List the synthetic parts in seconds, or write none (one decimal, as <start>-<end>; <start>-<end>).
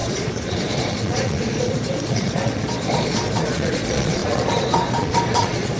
0.0-5.8